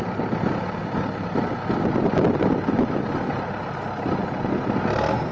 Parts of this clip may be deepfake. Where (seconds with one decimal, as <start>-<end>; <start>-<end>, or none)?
none

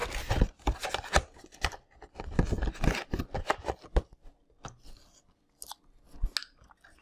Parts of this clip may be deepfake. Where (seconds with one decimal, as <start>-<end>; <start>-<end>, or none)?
none

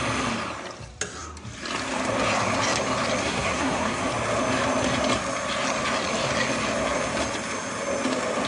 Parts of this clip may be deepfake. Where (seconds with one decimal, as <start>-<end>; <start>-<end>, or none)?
3.2-4.0

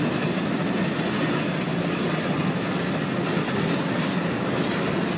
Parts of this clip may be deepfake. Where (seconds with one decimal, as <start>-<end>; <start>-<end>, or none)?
none

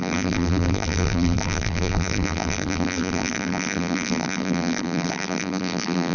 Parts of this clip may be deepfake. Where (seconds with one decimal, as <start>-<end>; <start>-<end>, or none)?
0.0-6.1

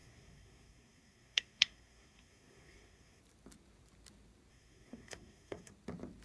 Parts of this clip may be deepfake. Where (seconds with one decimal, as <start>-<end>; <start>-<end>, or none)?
0.0-3.2; 4.5-5.7

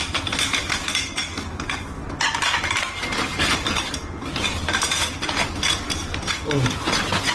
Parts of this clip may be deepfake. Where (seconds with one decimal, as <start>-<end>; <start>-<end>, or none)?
none

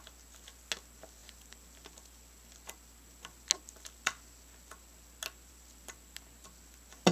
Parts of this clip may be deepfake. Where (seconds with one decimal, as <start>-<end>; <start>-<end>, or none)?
none